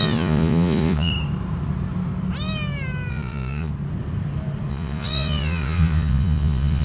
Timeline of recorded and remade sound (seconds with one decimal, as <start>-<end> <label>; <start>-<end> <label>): 0.0-1.1 remade; 1.1-3.1 recorded; 3.1-3.7 remade; 3.7-4.7 recorded; 4.7-6.8 remade